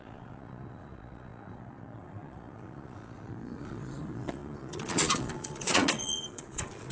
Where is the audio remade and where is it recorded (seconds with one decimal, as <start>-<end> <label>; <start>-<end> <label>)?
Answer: 0.0-6.9 remade